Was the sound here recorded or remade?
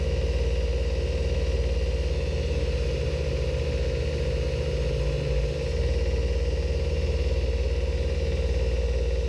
recorded